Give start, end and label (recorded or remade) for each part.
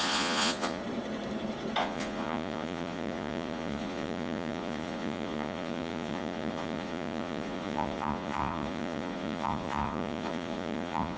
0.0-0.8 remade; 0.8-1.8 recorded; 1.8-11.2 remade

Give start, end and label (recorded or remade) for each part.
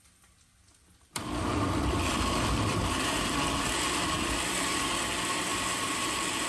0.0-0.8 recorded; 0.8-4.7 remade; 4.7-6.5 recorded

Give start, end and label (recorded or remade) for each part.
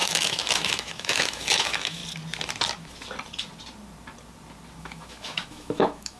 0.0-2.0 remade; 2.0-4.8 recorded; 4.8-6.2 remade